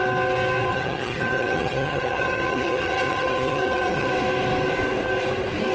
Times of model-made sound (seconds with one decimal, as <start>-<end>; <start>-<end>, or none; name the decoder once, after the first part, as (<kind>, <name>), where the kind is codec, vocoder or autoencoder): 0.7-4.1 (vocoder, HiFi-GAN)